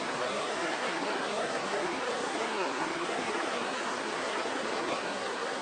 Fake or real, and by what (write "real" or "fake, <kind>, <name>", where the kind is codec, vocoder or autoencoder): fake, codec, SNAC